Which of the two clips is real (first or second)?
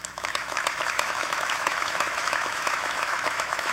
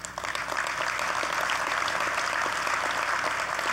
second